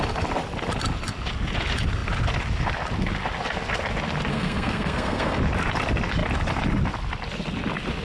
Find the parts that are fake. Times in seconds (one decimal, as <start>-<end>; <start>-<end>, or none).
4.3-5.4